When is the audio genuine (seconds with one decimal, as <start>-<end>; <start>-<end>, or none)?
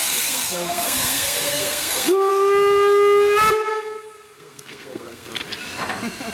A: 2.3-3.7; 5.3-6.3